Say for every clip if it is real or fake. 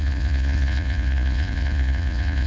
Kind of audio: fake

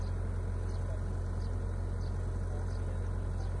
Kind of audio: real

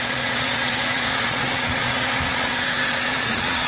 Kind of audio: fake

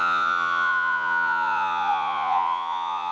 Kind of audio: fake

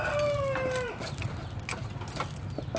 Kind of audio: real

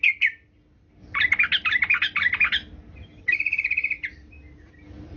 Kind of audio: real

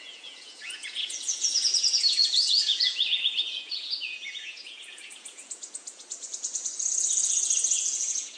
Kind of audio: fake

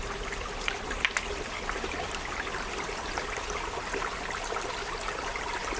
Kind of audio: real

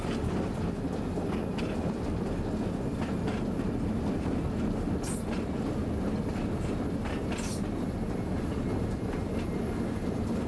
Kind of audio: real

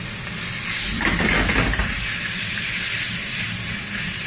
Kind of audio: real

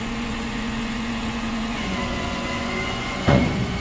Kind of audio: fake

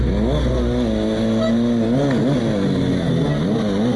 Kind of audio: real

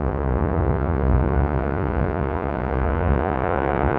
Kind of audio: fake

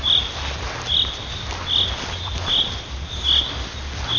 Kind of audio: real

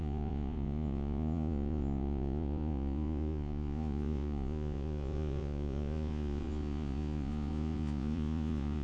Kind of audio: fake